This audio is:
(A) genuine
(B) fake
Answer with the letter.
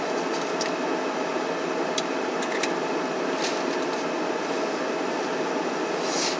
A